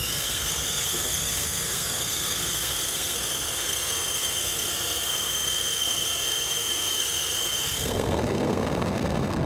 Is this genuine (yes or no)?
no